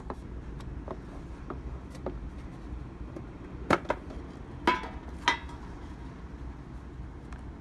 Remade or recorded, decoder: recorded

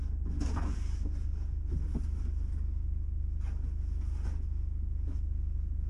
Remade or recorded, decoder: recorded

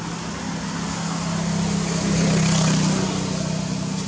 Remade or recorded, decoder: recorded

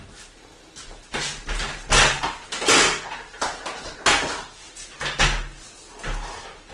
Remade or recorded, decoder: recorded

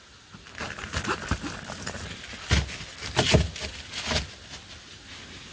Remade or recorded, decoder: recorded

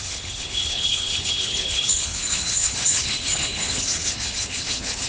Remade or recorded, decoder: remade, codec, HILCodec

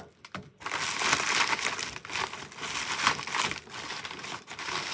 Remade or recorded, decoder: recorded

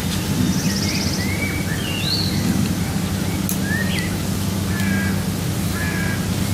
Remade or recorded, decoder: recorded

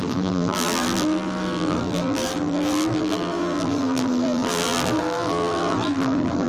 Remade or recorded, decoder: remade, vocoder, BigVGAN v2